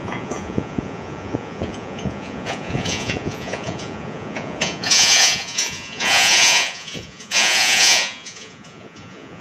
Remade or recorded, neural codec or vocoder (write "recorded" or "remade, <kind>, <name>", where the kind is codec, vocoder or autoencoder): remade, vocoder, Vocos